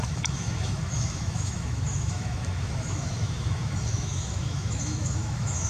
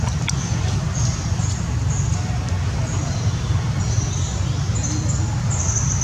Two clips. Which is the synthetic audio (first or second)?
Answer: first